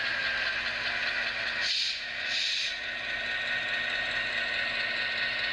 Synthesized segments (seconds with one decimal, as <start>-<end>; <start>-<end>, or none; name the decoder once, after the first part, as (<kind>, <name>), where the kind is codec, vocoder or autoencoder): 1.6-2.3 (vocoder, Vocos)